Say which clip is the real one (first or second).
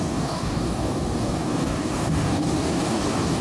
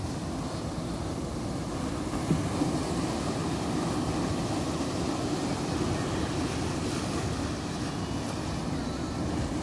second